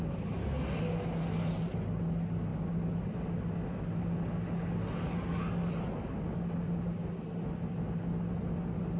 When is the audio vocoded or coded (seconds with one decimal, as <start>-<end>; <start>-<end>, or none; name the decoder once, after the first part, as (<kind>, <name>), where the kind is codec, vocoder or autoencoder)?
none